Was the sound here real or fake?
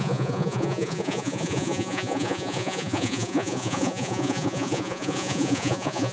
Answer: fake